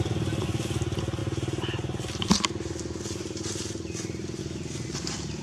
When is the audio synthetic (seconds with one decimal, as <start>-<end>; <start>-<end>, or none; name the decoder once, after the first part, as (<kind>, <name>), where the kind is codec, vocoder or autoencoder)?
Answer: 1.2-4.4 (vocoder, BigVGAN v2)